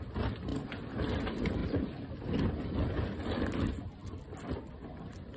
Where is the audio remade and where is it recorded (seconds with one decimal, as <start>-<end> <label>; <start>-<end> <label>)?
0.0-1.6 recorded; 1.6-2.3 remade; 2.3-5.4 recorded